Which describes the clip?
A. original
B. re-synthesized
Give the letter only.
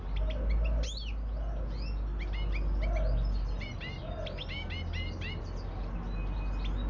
A